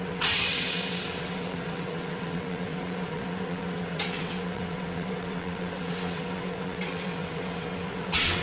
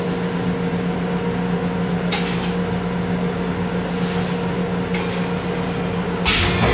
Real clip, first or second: second